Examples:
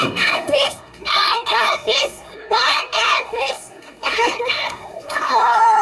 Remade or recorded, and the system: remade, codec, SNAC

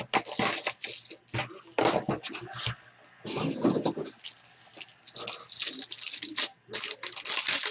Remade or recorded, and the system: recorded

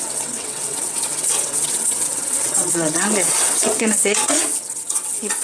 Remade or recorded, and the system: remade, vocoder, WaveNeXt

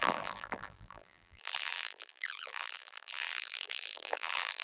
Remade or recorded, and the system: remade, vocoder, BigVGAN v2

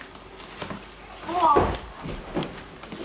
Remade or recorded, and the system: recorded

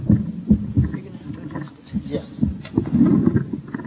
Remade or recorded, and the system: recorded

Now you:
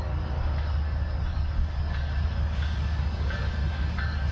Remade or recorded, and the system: remade, codec, DAC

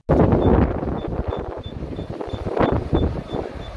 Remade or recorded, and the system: recorded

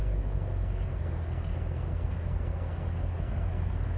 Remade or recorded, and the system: remade, codec, SNAC